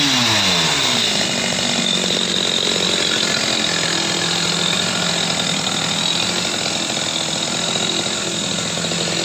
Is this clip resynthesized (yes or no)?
no